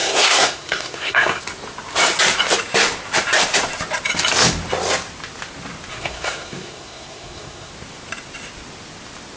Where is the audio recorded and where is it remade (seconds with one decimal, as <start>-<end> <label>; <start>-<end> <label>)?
0.0-1.4 remade; 1.4-5.9 recorded; 5.9-7.7 remade; 7.7-9.4 recorded